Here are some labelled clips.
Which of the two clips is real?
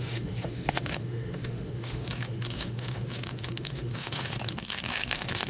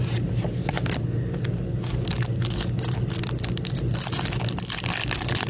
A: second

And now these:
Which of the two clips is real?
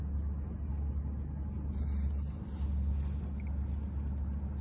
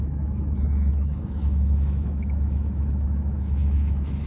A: first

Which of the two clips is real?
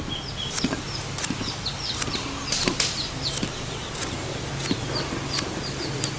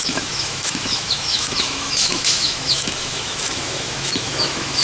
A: first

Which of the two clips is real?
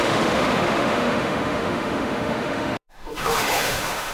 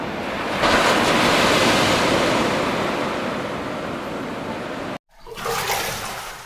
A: second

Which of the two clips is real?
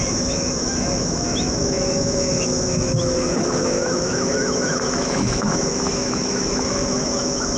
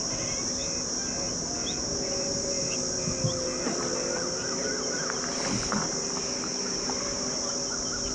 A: second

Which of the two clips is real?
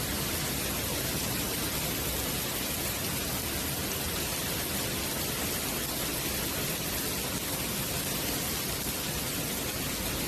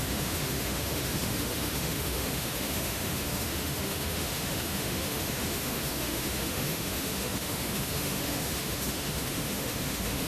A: first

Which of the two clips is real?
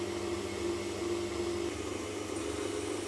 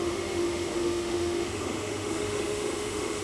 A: first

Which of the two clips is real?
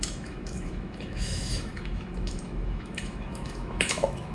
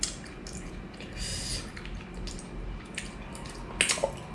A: second